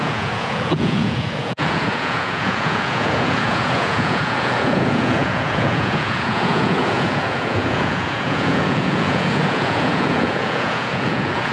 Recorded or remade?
remade